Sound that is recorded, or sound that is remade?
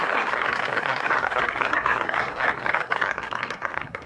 remade